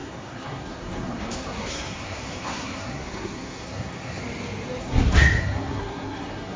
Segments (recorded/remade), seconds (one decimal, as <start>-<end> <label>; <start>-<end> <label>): 0.0-4.2 remade; 4.2-4.8 recorded; 4.8-6.6 remade